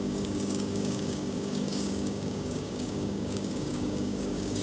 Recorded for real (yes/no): no